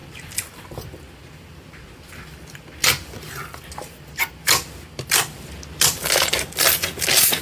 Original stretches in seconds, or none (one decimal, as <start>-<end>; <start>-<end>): 0.0-7.4